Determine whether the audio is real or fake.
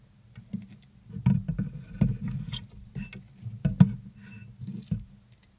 real